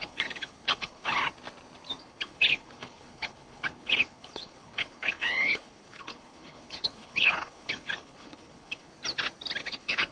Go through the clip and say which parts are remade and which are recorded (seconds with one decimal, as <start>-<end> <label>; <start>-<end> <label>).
0.0-1.2 remade; 1.2-2.0 recorded; 2.0-8.9 remade; 8.9-9.6 recorded; 9.6-10.1 remade